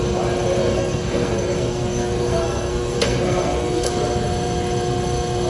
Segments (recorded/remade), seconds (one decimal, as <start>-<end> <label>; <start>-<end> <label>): 0.0-0.6 recorded; 0.6-3.9 remade; 3.9-5.5 recorded